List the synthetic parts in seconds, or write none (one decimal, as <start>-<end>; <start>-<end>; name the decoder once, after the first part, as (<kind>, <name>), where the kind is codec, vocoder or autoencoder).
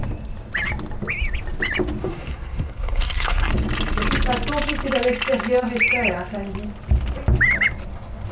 2.0-3.5 (codec, SNAC)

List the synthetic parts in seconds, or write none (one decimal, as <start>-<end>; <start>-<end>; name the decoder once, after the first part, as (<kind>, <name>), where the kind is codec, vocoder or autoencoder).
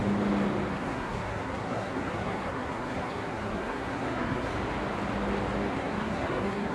0.7-4.5 (codec, SNAC); 5.7-6.7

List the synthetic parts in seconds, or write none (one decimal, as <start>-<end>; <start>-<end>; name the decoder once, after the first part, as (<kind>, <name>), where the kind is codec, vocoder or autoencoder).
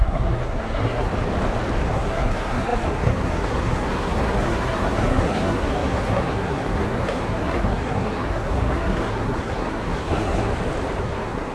0.0-1.1 (codec, SNAC); 1.8-10.5; 11.0-11.5